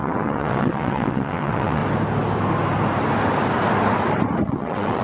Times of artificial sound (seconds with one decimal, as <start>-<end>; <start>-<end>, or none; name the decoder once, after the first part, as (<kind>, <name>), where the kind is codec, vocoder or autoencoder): 0.0-1.8 (vocoder, WaveNeXt); 4.4-5.0